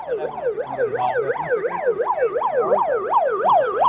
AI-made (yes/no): no